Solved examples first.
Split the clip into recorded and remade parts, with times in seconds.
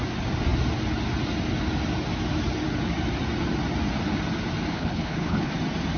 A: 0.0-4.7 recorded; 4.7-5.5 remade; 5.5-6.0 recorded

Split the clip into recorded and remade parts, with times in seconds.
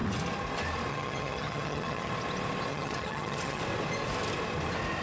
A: 0.0-0.9 recorded; 0.9-2.1 remade; 2.1-2.7 recorded; 2.7-3.6 remade; 3.6-5.0 recorded